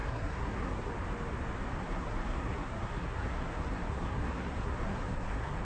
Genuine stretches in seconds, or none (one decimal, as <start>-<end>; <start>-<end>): 0.9-1.8